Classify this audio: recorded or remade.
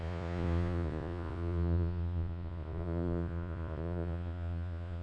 remade